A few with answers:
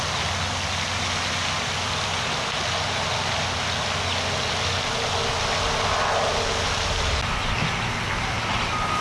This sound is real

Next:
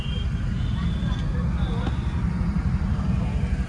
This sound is real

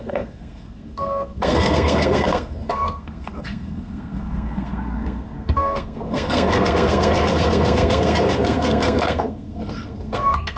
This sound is fake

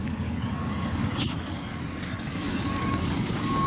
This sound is fake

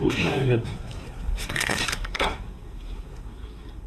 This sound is fake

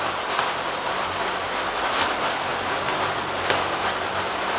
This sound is real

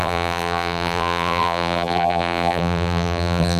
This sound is fake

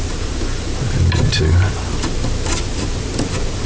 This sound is real